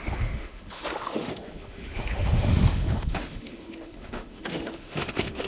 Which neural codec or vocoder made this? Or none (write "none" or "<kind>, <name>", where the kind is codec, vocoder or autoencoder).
autoencoder, DAC-VAE